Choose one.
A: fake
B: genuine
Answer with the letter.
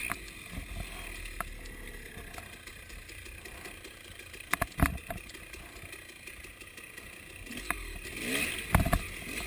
B